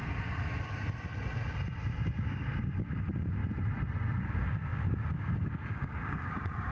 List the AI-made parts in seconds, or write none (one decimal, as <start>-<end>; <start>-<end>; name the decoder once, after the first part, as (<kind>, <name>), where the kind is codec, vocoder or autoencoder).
2.2-3.4 (codec, DAC); 4.2-6.7